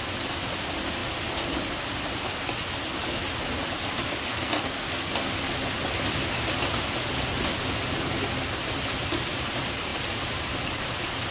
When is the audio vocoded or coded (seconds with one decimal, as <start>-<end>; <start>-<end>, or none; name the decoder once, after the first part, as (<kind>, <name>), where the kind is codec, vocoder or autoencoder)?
4.3-5.1 (codec, SNAC)